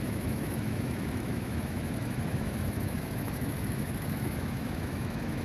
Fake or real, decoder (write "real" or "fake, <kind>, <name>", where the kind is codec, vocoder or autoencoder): fake, autoencoder, DAC-VAE